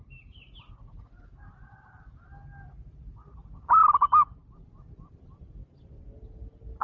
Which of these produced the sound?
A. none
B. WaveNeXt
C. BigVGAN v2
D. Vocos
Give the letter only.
A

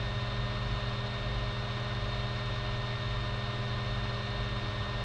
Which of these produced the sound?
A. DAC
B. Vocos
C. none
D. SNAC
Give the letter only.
C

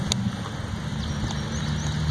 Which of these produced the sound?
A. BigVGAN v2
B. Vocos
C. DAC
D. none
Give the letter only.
D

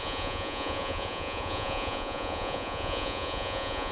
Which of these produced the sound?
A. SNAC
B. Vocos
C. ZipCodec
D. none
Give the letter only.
B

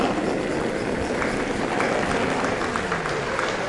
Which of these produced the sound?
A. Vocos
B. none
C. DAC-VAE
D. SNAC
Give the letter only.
B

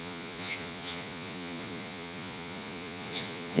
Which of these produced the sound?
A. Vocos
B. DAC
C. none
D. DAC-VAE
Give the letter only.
A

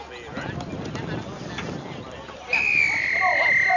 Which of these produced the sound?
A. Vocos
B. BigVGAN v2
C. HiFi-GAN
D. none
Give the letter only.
D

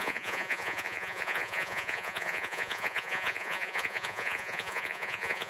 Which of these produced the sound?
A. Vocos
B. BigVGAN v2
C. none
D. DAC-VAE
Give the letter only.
A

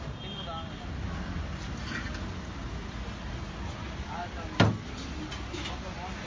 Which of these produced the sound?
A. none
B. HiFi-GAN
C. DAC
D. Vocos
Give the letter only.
A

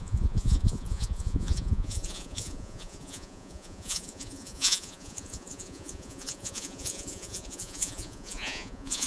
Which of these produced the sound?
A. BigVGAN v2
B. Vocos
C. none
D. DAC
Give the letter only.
B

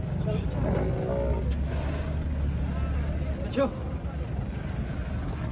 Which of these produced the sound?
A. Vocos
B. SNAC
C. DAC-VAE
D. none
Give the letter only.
D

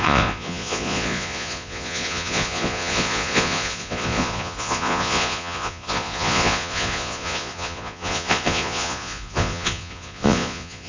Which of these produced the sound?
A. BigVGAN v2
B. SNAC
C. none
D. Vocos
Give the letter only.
D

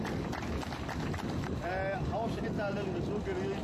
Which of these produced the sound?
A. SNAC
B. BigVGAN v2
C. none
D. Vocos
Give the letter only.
C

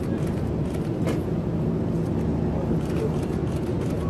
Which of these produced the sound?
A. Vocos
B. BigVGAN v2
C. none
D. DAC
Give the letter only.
C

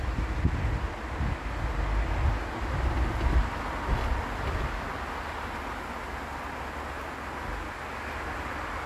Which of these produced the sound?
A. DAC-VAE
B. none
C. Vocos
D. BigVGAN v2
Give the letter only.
B